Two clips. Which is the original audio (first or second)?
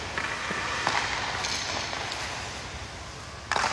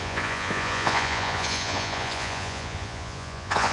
first